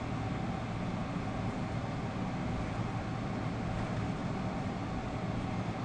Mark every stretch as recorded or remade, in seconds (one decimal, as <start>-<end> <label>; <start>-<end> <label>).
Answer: 0.0-5.8 recorded